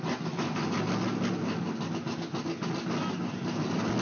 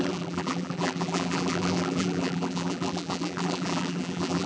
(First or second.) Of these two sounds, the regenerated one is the second